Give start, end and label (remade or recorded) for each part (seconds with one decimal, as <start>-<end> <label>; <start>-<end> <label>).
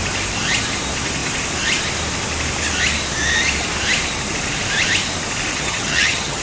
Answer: 0.0-5.5 recorded; 5.5-6.4 remade